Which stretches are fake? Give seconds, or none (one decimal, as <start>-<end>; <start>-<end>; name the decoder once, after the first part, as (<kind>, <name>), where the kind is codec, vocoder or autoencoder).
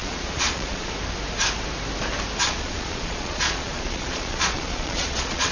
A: 0.0-0.9 (vocoder, Vocos); 2.4-5.5